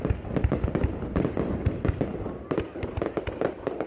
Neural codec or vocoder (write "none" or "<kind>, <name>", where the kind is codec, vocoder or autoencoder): none